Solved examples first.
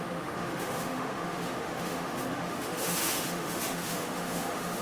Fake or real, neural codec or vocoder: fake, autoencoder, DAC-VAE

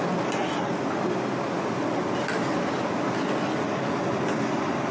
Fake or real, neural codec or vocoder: real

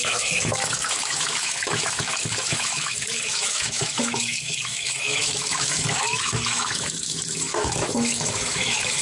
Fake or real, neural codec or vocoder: fake, autoencoder, DAC-VAE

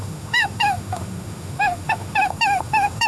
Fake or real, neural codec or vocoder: fake, autoencoder, DAC-VAE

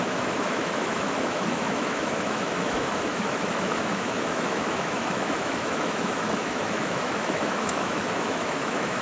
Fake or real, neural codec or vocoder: fake, autoencoder, DAC-VAE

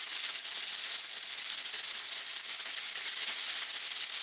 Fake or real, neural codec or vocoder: real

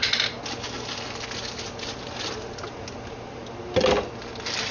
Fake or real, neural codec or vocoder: real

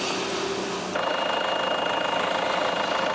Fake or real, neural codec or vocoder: real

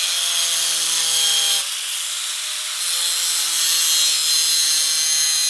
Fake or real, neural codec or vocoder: real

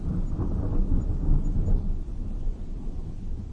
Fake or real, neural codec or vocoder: real